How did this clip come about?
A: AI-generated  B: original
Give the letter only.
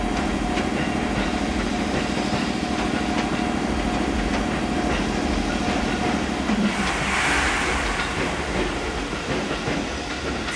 B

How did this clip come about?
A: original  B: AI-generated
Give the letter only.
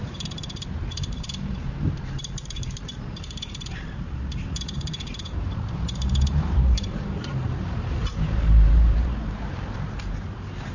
B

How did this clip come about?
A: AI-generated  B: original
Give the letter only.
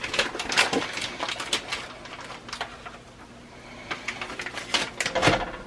B